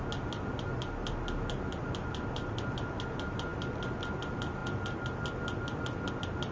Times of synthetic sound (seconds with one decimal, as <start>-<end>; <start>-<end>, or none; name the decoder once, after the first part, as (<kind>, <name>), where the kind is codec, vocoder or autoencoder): none